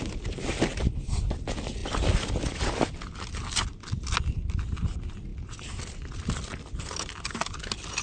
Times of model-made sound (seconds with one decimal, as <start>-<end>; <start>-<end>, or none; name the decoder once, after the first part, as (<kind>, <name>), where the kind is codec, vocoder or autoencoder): none